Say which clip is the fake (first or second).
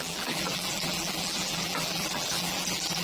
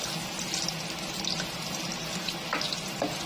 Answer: first